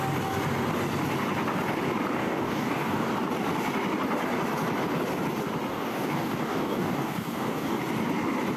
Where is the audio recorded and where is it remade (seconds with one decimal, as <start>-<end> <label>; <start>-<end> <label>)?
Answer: 0.0-2.2 recorded; 2.2-3.1 remade; 3.1-5.7 recorded; 5.7-7.8 remade; 7.8-8.6 recorded